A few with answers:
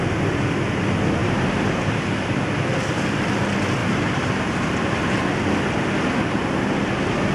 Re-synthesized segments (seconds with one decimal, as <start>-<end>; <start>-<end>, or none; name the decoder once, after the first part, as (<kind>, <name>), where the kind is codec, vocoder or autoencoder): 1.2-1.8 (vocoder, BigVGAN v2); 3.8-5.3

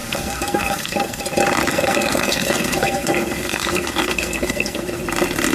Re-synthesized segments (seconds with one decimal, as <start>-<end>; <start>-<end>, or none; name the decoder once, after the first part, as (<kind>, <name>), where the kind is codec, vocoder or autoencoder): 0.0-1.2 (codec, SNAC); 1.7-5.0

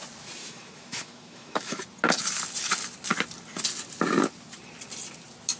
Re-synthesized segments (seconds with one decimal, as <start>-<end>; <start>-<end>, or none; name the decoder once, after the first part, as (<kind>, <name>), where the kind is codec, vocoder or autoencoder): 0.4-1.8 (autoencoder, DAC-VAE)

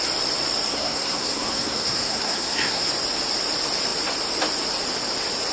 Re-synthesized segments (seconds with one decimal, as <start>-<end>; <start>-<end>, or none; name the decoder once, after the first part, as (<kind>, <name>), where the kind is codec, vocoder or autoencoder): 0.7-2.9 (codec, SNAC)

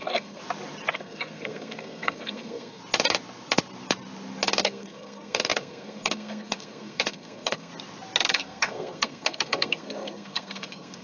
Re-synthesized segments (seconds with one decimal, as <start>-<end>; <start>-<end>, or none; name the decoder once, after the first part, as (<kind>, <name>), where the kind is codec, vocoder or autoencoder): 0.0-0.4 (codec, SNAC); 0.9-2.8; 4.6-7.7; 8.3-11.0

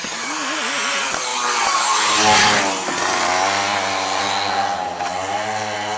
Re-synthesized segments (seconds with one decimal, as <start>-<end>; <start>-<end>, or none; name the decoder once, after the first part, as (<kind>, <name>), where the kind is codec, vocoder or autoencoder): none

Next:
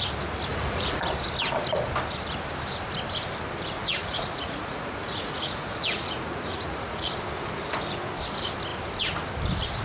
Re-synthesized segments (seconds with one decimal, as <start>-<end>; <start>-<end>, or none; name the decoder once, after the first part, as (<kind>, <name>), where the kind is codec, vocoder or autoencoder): 0.5-1.0 (vocoder, Vocos); 3.8-7.1